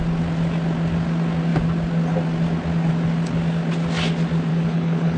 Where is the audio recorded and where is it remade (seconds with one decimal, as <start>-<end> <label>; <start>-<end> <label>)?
0.0-4.5 recorded; 4.5-5.2 remade